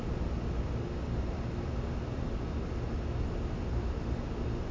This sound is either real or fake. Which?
real